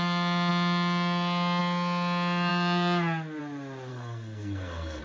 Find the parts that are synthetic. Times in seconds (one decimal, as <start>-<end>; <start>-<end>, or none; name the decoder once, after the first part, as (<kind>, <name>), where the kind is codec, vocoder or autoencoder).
3.9-5.0 (codec, SNAC)